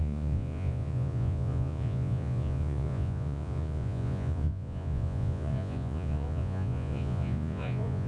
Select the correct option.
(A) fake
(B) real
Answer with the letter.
A